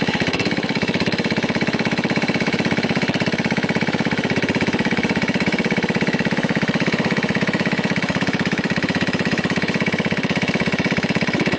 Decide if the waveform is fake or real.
fake